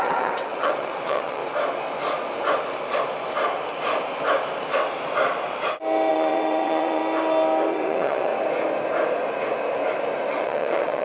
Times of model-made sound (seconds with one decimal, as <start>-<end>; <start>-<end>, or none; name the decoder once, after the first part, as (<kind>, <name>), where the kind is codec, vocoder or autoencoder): 0.0-1.4 (vocoder, WaveNeXt); 6.1-7.0; 7.6-8.3; 10.3-11.0